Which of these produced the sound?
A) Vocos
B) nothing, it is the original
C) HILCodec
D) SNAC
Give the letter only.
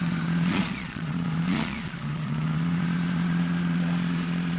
A